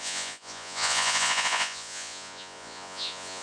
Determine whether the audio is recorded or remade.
remade